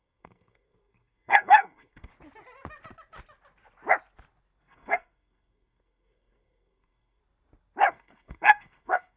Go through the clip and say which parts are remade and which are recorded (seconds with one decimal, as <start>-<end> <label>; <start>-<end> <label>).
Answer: 0.0-2.1 remade; 2.1-4.6 recorded; 4.6-7.2 remade; 7.2-7.9 recorded; 7.9-9.2 remade